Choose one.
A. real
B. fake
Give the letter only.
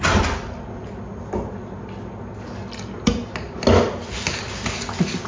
A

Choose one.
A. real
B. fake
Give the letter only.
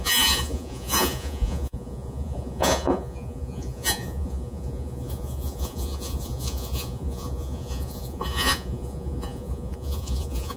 B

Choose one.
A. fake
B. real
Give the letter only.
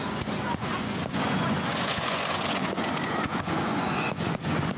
A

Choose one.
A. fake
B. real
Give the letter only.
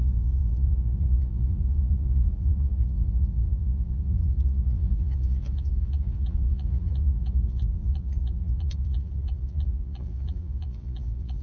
A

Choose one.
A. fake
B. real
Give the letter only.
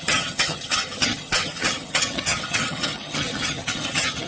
A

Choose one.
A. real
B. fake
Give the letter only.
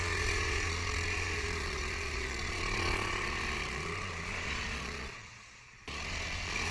B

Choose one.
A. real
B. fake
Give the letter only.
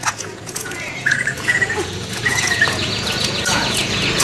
B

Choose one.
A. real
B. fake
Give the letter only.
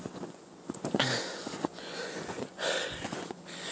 B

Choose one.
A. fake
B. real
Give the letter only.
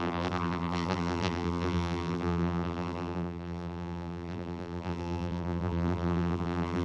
A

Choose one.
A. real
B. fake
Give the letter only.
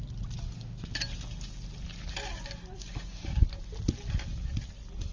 A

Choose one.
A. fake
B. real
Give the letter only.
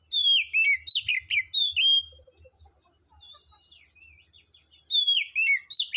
B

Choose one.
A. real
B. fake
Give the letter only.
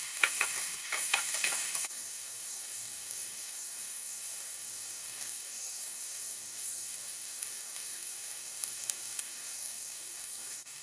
B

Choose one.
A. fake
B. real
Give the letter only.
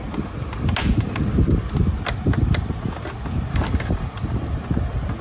B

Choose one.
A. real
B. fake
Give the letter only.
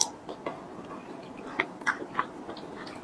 A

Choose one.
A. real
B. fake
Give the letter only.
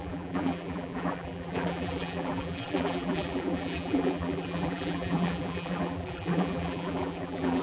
B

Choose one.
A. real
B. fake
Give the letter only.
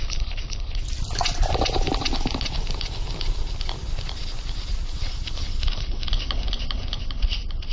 A